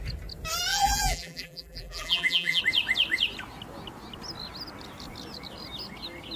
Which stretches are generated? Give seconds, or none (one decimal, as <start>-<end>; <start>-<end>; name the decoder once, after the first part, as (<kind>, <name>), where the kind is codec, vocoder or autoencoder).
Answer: 0.7-2.6 (vocoder, BigVGAN v2)